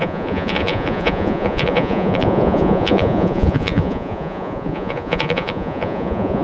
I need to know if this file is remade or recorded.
remade